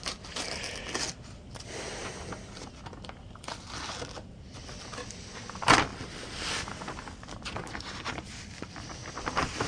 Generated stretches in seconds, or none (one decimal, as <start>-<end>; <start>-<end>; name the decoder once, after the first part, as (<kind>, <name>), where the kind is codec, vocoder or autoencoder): none